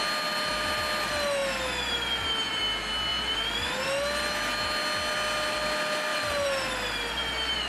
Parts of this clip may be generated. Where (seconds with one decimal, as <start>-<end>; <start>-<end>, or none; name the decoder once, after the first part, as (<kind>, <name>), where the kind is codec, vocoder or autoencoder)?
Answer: 3.1-3.7 (vocoder, BigVGAN v2); 6.1-6.7